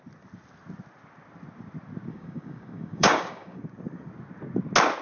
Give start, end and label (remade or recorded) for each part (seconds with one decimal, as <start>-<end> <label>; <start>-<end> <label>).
0.0-2.1 recorded; 2.1-3.6 remade; 3.6-5.0 recorded